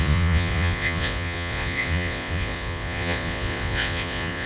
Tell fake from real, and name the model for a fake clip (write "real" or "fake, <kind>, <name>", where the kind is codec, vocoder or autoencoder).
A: fake, vocoder, Vocos